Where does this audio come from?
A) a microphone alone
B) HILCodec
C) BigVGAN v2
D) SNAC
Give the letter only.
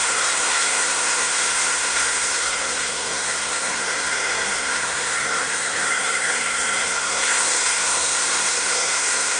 D